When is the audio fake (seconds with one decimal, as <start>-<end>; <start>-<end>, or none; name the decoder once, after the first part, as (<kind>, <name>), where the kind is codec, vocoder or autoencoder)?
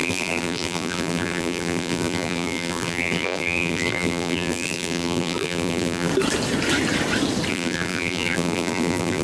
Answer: 0.0-6.1 (vocoder, BigVGAN v2); 7.5-9.2